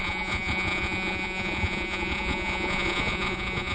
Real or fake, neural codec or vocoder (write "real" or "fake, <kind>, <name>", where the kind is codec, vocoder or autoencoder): fake, vocoder, Vocos